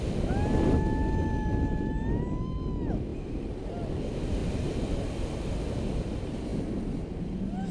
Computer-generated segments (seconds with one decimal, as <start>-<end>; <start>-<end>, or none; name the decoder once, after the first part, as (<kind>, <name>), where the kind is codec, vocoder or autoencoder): none